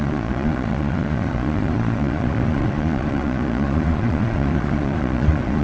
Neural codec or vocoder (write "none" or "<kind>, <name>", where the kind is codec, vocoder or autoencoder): vocoder, Vocos